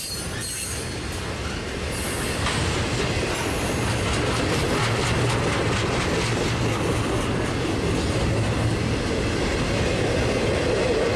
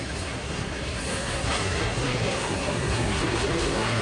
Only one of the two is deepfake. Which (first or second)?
second